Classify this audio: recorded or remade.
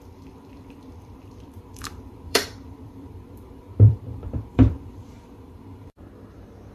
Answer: remade